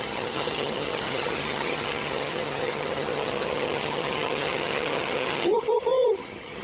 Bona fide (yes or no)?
no